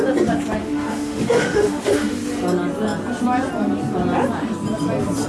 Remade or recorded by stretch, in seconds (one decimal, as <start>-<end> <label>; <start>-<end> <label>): 0.0-0.6 recorded; 0.6-2.2 remade; 2.2-5.3 recorded